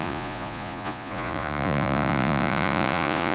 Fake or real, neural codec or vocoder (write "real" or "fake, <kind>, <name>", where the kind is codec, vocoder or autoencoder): fake, vocoder, Vocos